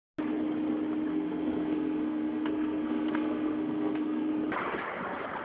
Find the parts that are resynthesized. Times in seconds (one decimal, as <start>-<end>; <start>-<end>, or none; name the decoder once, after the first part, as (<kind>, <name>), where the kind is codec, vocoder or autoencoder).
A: 1.1-4.3 (codec, SNAC)